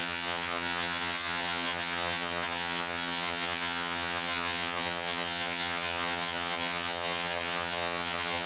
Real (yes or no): no